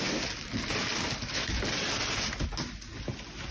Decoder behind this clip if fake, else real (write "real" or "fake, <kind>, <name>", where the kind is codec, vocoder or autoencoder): real